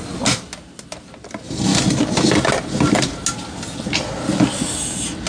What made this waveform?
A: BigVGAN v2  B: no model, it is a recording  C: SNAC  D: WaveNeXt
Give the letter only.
B